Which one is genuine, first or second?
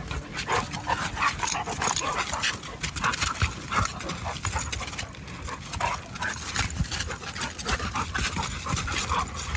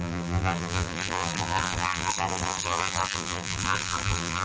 first